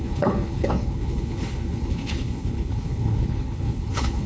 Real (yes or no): no